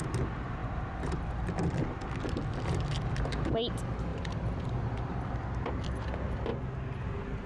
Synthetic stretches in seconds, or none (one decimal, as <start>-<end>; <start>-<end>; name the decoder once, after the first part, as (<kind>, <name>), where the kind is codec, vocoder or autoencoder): 0.6-1.5 (vocoder, BigVGAN v2); 2.5-3.5; 4.1-5.3